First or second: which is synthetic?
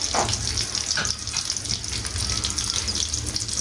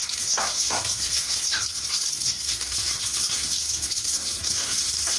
second